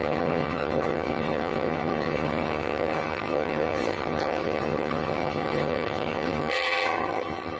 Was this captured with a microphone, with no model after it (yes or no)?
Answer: no